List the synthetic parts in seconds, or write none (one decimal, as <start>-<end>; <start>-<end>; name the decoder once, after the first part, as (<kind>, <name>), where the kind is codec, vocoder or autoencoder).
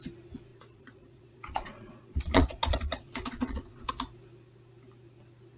0.5-3.9 (vocoder, Vocos)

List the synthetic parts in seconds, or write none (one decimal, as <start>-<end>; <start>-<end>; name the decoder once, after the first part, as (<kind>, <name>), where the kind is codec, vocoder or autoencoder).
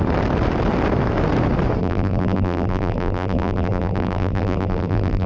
1.8-5.3 (vocoder, BigVGAN v2)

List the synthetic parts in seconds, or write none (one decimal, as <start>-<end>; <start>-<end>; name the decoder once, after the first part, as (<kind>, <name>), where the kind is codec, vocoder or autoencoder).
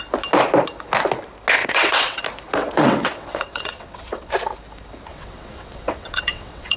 1.6-2.2 (vocoder, WaveNeXt); 2.6-4.3; 5.1-6.8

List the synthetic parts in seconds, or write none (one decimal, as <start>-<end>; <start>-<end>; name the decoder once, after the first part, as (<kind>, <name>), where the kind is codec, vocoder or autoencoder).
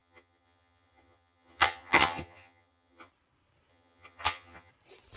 0.0-3.1 (vocoder, HiFi-GAN); 3.7-4.7